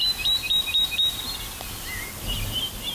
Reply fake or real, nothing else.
real